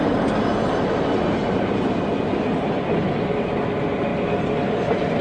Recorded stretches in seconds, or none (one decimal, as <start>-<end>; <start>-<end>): 0.0-1.4; 2.1-5.2

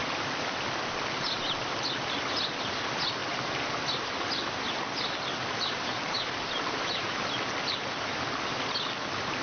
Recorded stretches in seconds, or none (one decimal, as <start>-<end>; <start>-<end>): 0.0-5.4; 7.2-9.4

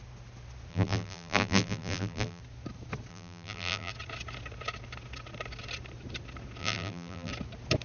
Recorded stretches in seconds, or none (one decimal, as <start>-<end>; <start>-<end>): 0.0-0.7; 2.4-3.1; 3.9-6.6; 7.3-7.8